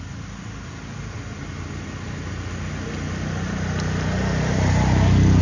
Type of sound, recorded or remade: recorded